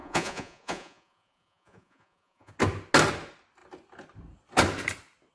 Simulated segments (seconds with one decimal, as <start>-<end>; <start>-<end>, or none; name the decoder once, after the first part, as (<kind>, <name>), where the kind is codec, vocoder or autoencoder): 0.0-2.5 (vocoder, Vocos)